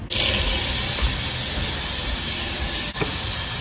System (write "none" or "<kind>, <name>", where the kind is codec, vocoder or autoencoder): none